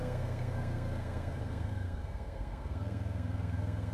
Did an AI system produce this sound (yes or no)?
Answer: yes